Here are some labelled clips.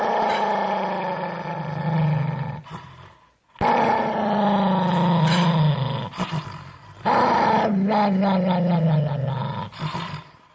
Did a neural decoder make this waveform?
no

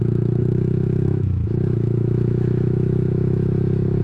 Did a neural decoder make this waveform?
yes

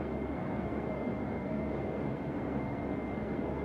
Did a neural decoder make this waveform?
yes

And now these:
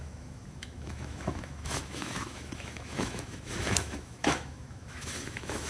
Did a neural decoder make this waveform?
yes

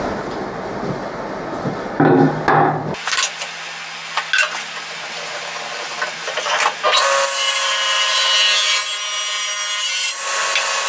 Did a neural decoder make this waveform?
no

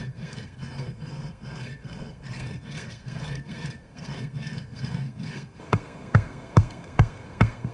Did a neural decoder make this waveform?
yes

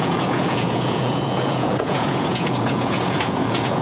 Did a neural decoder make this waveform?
yes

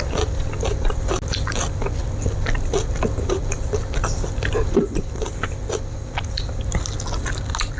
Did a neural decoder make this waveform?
no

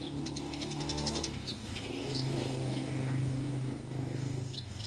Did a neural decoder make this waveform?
yes